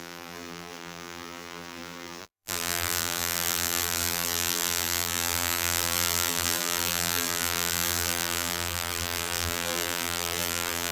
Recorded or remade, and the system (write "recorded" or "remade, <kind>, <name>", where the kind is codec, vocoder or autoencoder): remade, vocoder, BigVGAN v2